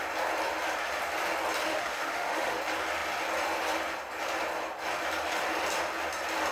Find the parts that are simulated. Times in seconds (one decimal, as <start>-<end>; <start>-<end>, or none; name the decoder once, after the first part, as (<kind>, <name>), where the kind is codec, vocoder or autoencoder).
1.7-2.6 (autoencoder, DAC-VAE)